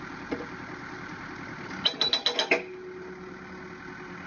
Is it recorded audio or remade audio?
recorded